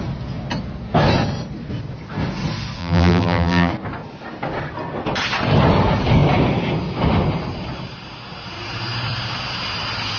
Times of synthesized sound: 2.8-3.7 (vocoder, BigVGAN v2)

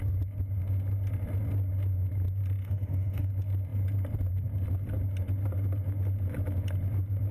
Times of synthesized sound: 2.6-3.3 (autoencoder, DAC-VAE)